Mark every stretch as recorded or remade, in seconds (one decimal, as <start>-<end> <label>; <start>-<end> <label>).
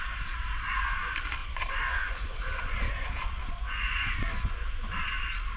0.0-1.4 recorded; 1.4-2.8 remade; 2.8-3.4 recorded; 3.4-4.9 remade; 4.9-5.6 recorded